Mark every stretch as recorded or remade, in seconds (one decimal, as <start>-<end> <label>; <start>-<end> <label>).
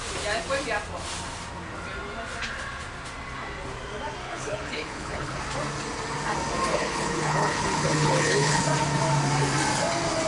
0.0-4.2 recorded; 4.2-5.4 remade; 5.4-6.7 recorded; 6.7-8.6 remade; 8.6-10.3 recorded